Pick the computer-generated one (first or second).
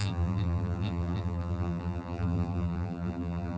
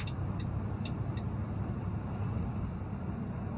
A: first